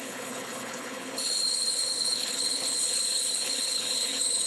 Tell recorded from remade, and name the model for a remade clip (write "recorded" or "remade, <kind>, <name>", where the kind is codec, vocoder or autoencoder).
remade, codec, HILCodec